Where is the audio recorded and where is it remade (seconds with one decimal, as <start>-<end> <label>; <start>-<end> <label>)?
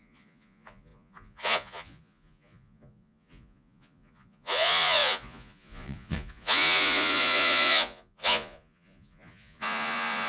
0.0-10.3 remade